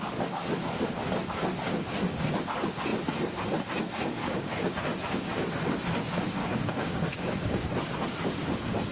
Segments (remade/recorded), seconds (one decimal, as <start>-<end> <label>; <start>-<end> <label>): 0.0-4.2 recorded; 4.2-4.7 remade; 4.7-6.4 recorded; 6.4-7.7 remade; 7.7-8.9 recorded